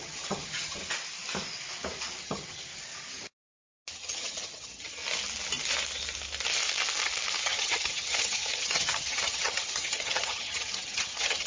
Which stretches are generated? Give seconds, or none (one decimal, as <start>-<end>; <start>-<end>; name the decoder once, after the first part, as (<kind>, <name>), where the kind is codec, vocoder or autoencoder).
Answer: 0.0-0.8 (vocoder, HiFi-GAN); 2.2-2.7; 3.9-5.0; 7.4-11.5